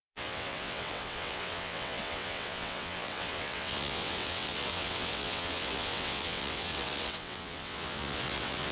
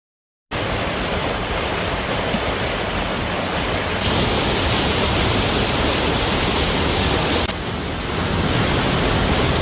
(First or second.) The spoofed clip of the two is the first